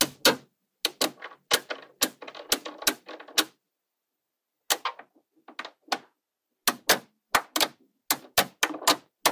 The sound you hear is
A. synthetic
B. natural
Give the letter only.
B